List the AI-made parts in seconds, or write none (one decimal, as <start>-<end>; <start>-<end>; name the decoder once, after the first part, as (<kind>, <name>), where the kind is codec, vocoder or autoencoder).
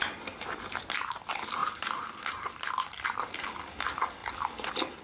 none